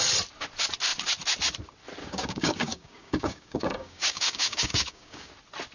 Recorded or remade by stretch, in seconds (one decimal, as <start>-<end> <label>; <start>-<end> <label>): 0.0-2.0 recorded; 2.0-5.3 remade; 5.3-5.7 recorded